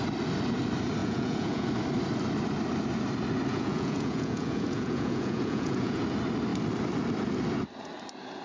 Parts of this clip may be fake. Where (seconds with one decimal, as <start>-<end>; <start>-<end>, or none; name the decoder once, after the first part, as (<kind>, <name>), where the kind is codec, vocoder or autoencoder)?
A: 1.0-1.7 (vocoder, Vocos); 3.5-6.0